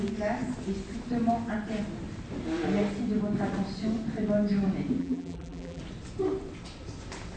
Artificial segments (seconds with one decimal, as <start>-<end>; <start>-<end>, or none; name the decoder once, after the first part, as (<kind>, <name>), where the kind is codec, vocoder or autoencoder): 5.0-5.8 (vocoder, BigVGAN v2)